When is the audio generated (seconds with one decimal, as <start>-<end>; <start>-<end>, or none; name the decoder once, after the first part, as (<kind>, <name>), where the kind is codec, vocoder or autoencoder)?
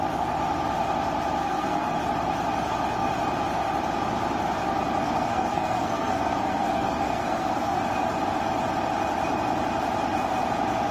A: 1.4-2.0 (codec, SNAC); 5.0-7.8